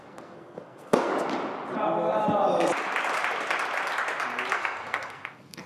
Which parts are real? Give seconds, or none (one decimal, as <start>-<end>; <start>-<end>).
1.1-4.5